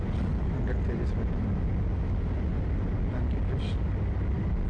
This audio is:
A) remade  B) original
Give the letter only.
B